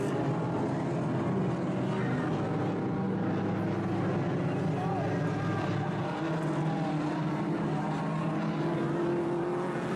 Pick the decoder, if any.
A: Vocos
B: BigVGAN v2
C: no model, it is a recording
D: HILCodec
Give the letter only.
C